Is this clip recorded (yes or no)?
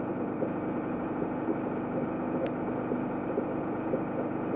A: yes